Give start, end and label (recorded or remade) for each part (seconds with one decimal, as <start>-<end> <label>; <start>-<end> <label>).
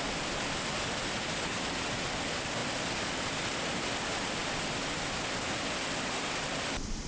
0.0-7.1 recorded